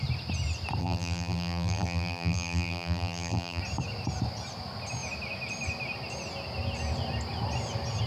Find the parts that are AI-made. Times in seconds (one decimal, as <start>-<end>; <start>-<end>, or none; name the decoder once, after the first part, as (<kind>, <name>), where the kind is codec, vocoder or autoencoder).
0.8-3.6 (vocoder, BigVGAN v2)